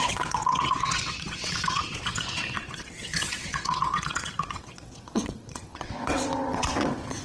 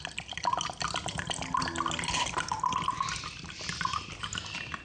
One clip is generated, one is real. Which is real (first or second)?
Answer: second